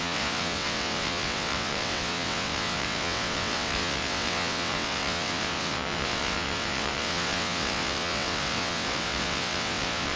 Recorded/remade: remade